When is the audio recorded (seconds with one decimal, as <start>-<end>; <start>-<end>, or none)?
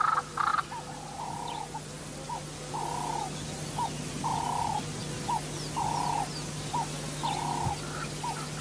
0.0-8.6